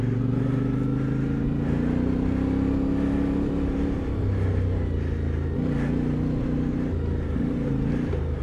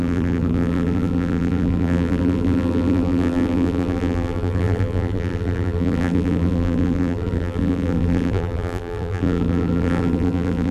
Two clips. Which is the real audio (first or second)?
first